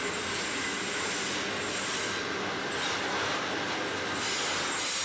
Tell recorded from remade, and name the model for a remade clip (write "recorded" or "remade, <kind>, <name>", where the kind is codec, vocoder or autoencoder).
recorded